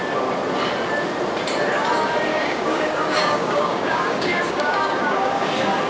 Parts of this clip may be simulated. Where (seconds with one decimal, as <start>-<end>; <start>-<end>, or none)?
2.3-5.5